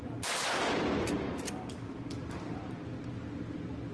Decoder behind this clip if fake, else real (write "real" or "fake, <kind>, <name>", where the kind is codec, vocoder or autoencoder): real